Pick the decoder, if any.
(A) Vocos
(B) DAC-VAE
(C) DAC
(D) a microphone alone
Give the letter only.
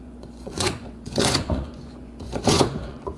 A